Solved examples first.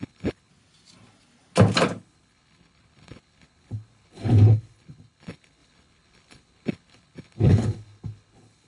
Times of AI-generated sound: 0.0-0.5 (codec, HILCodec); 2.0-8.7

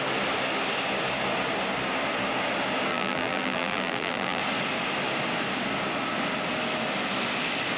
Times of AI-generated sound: 2.9-4.4 (vocoder, BigVGAN v2)

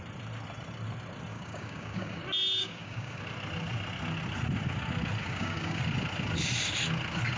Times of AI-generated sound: 1.3-2.2 (codec, DAC); 2.6-3.2; 5.2-5.8

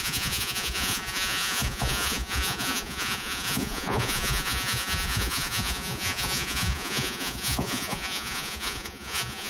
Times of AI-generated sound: 0.0-9.5 (vocoder, Vocos)